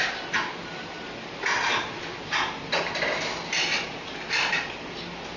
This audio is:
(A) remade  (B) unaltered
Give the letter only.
B